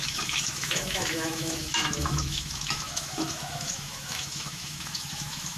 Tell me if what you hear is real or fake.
fake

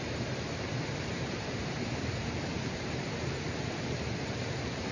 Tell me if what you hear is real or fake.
fake